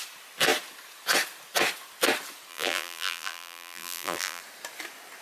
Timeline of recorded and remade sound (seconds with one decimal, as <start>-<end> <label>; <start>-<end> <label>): 0.0-2.5 recorded; 2.5-4.4 remade; 4.4-5.2 recorded